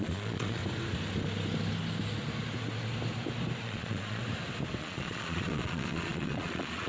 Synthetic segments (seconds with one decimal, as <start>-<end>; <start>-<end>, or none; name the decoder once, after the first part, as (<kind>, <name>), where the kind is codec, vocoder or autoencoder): 0.0-0.6 (vocoder, Vocos); 3.6-4.2; 4.8-6.9